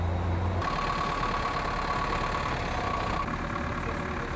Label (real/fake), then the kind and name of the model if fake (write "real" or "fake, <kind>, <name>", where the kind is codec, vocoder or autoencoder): real